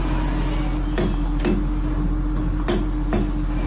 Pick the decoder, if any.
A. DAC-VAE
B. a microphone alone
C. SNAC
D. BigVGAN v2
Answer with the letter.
B